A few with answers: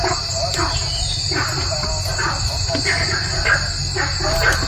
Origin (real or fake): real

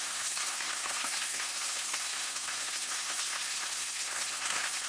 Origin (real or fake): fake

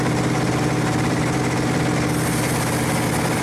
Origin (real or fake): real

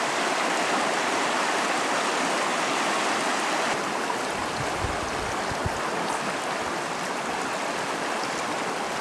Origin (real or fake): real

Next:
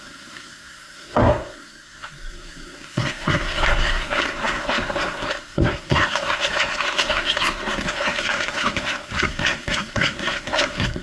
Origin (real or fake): fake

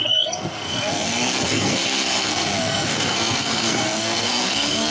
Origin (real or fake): fake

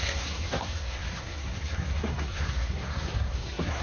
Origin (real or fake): fake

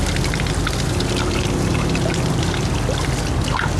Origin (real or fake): real